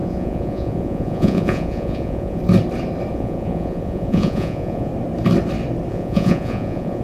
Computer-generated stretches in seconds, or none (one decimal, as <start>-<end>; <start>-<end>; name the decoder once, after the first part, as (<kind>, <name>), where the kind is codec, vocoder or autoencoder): 0.0-2.4 (vocoder, Vocos); 3.1-4.9; 5.9-7.0

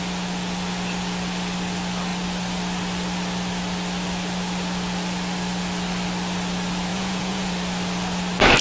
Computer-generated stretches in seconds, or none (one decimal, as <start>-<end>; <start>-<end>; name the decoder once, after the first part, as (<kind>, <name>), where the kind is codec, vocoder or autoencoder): 6.9-7.5 (vocoder, Vocos)

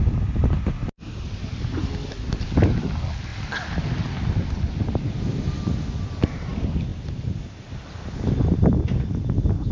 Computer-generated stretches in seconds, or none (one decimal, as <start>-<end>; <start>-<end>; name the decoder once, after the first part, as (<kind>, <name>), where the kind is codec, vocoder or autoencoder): none

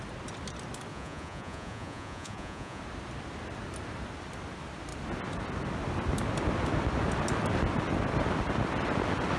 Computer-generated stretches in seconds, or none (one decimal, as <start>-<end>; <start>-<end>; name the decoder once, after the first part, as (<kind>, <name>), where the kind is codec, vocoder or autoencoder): 0.9-2.8 (vocoder, Vocos)

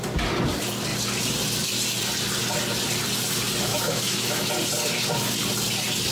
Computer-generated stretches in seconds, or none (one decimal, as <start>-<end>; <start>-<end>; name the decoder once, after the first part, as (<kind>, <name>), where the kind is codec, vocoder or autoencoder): 3.7-4.5 (autoencoder, DAC-VAE)

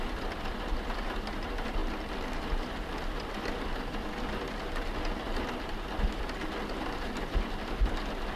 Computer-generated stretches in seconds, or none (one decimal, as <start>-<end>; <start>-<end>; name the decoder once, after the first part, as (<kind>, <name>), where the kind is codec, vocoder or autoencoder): 0.0-1.8 (vocoder, BigVGAN v2); 6.7-8.4

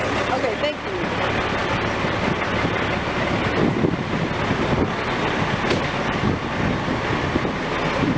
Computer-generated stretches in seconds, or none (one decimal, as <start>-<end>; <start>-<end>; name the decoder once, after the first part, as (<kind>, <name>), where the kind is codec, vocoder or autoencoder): none